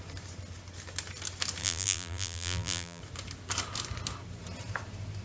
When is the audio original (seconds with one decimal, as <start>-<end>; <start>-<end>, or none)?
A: 0.0-1.6; 3.0-5.2